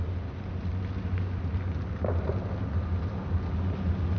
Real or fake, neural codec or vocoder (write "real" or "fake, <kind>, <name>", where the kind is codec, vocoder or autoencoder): real